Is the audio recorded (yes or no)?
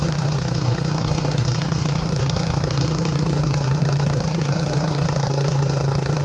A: no